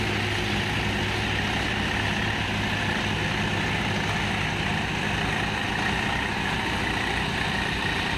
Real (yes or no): yes